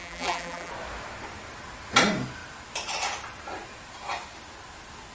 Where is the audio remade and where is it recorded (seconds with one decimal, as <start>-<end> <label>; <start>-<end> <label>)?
0.0-0.7 remade; 0.7-5.1 recorded